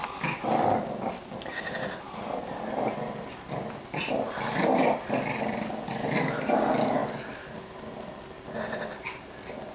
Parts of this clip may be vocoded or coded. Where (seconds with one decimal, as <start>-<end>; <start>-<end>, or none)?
none